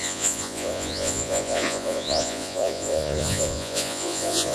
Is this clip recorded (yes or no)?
no